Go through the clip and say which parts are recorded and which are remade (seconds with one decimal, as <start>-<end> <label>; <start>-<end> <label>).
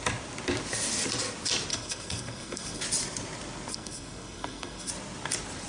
0.0-1.7 recorded; 1.7-2.8 remade; 2.8-3.7 recorded; 3.7-4.9 remade; 4.9-5.7 recorded